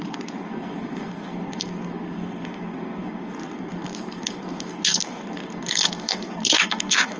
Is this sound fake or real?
fake